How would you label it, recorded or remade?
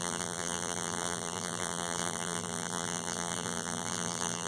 remade